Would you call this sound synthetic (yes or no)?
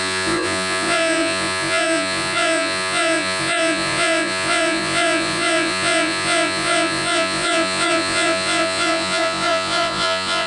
yes